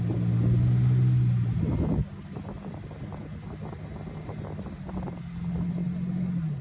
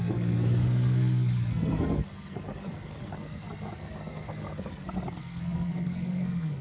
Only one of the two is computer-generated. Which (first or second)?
second